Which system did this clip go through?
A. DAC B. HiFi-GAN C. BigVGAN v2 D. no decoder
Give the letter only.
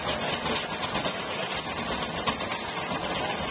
D